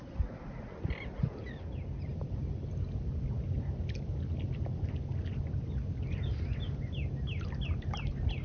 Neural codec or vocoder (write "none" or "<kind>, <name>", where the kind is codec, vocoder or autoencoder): none